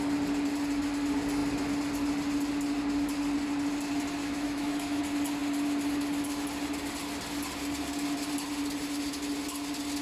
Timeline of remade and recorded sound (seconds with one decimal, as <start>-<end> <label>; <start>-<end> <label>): 0.0-4.2 recorded; 4.2-5.0 remade; 5.0-10.0 recorded